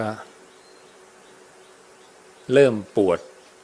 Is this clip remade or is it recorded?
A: recorded